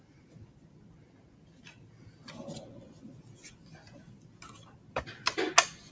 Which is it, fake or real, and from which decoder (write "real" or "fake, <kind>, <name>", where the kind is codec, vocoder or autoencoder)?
real